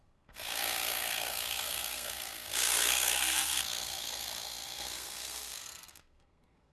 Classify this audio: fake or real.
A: fake